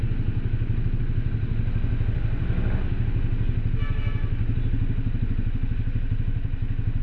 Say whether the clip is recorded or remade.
recorded